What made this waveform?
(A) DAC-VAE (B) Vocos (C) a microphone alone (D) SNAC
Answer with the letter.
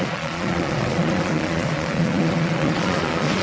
B